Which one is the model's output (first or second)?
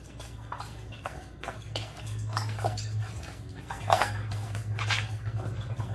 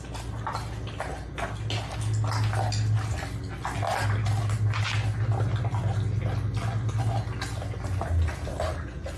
first